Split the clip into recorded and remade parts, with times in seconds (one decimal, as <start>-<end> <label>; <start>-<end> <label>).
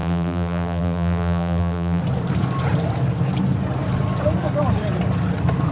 0.0-2.0 remade; 2.0-5.7 recorded